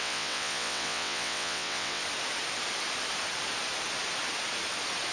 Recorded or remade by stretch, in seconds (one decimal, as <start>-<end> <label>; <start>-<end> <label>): 0.0-2.0 remade; 2.0-5.1 recorded